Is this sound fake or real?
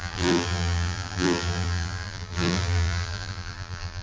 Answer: fake